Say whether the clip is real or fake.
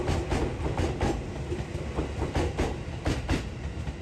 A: real